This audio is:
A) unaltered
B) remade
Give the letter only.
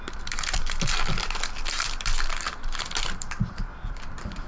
A